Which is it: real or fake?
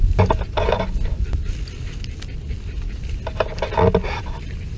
real